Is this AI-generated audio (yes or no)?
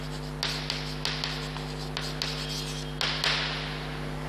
no